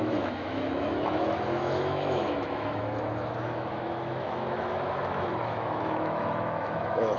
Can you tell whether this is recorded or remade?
remade